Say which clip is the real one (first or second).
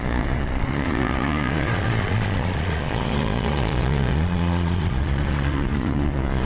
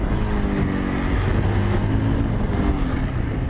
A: second